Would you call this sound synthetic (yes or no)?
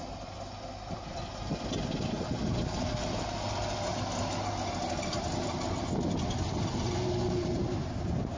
no